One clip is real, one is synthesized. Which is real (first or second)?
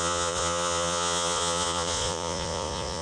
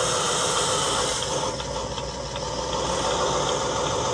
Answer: second